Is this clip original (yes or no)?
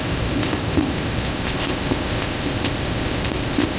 no